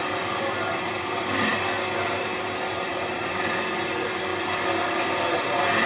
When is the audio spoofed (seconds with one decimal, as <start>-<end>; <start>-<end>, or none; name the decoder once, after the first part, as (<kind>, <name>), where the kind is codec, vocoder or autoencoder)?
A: 0.0-1.5 (vocoder, BigVGAN v2); 2.8-4.3